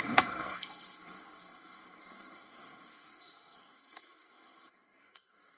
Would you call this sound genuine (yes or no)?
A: no